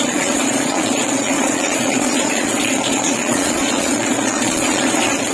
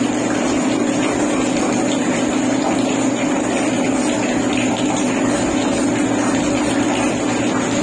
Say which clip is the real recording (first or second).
second